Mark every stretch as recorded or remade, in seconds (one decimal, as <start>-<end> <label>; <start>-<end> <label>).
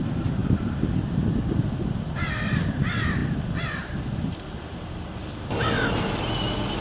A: 0.0-6.8 recorded